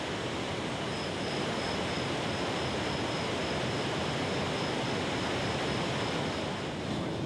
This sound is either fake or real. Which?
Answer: real